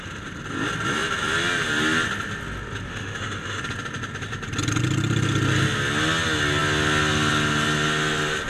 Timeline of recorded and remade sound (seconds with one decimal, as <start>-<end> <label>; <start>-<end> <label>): 0.0-2.9 recorded; 2.9-3.6 remade; 3.6-8.5 recorded